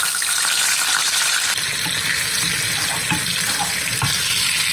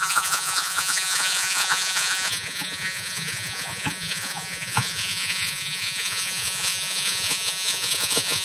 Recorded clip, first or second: first